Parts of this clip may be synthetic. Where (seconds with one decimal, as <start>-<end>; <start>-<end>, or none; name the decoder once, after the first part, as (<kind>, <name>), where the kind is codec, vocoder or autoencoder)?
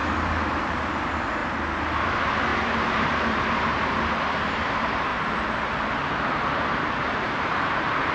1.4-2.1 (vocoder, BigVGAN v2); 2.5-4.2; 5.1-8.1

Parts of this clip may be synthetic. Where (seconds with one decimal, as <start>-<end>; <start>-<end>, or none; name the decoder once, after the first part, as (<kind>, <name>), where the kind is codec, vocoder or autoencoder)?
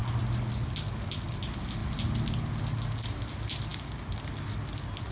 1.8-2.5 (vocoder, BigVGAN v2)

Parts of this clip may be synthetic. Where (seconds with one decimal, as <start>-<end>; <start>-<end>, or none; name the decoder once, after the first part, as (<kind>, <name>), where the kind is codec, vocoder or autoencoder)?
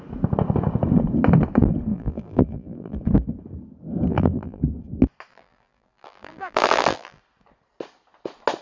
1.9-3.0 (vocoder, BigVGAN v2); 4.1-4.6; 5.3-7.2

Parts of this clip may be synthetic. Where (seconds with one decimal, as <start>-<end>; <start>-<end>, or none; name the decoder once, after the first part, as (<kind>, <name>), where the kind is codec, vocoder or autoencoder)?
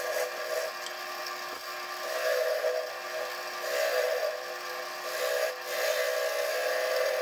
none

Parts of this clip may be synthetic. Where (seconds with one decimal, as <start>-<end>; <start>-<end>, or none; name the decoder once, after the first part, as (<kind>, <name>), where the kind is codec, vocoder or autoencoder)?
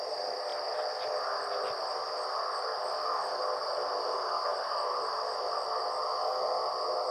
none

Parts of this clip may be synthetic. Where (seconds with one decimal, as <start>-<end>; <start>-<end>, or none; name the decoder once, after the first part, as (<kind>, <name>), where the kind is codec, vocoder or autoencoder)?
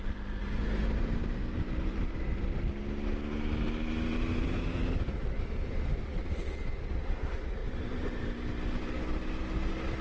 0.4-2.1 (vocoder, BigVGAN v2); 4.1-4.6; 7.6-8.2